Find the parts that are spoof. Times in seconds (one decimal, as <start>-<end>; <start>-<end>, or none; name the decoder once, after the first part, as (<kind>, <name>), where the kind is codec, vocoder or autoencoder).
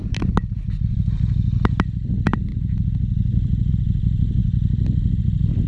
none